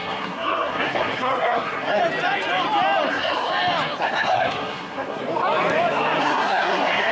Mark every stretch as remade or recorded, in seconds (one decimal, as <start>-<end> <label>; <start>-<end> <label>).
0.0-2.0 remade; 2.0-3.1 recorded; 3.1-3.5 remade; 3.5-4.0 recorded; 4.0-5.2 remade; 5.2-6.2 recorded; 6.2-7.1 remade